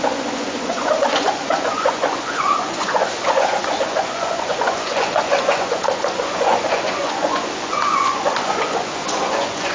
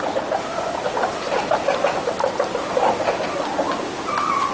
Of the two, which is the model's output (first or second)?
first